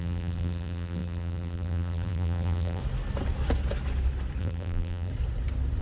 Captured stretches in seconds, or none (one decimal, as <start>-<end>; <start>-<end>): 2.8-4.4; 5.1-5.8